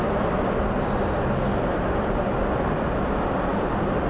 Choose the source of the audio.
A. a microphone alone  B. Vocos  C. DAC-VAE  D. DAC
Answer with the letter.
A